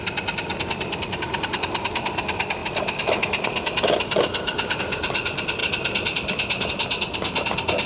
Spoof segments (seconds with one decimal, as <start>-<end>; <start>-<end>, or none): none